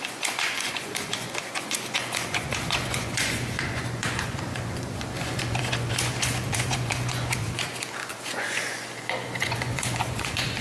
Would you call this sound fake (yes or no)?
yes